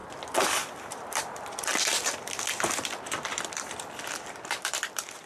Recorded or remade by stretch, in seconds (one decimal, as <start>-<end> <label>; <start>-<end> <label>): 0.0-0.7 recorded; 0.7-1.7 remade; 1.7-2.5 recorded; 2.5-5.3 remade